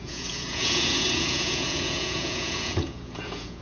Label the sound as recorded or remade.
remade